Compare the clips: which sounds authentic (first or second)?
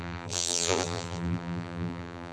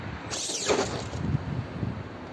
second